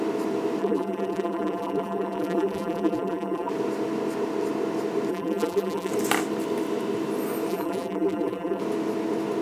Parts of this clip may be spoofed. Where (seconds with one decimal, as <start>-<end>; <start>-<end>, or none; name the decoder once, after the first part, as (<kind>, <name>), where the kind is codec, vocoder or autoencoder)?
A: 0.6-3.5 (vocoder, BigVGAN v2); 5.1-5.9; 7.5-8.6